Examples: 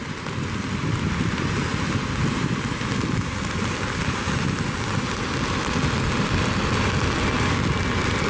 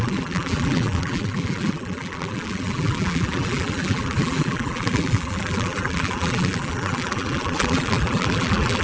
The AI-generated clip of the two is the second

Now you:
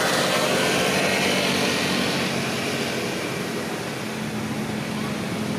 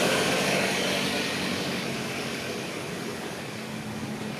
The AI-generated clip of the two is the second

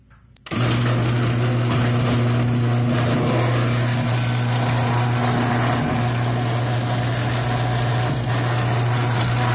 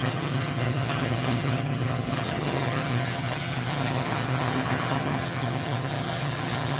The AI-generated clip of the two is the second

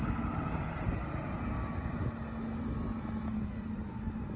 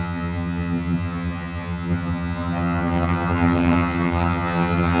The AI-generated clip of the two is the second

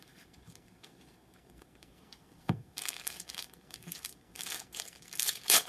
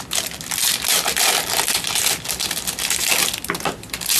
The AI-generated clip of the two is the first